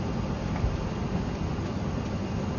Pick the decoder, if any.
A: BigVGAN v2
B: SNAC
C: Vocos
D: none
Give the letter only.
D